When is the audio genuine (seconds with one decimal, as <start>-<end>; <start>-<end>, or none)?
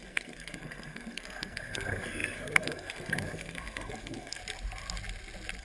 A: 4.4-5.6